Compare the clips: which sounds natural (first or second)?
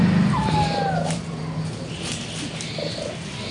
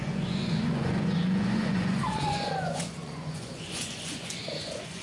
first